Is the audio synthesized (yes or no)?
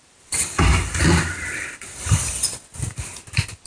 no